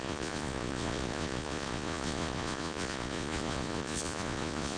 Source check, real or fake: fake